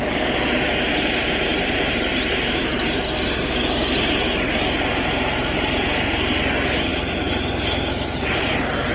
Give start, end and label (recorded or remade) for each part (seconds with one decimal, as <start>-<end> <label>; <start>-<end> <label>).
0.0-0.9 recorded; 0.9-6.0 remade; 6.0-6.9 recorded; 6.9-8.5 remade; 8.5-8.9 recorded